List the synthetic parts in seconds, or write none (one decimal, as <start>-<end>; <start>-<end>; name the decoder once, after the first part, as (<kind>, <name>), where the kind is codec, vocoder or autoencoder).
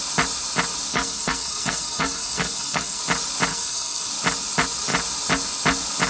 0.9-3.0 (codec, SNAC); 3.5-4.1